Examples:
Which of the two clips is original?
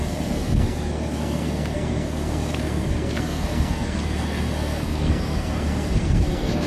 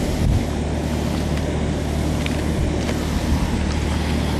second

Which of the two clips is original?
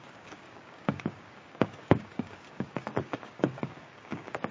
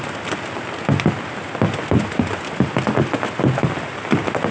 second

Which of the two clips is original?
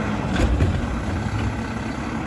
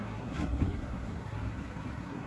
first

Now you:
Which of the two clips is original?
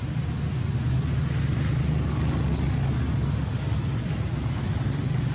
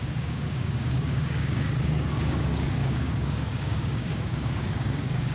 first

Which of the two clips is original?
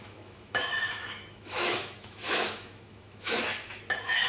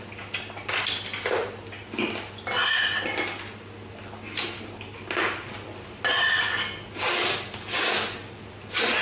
second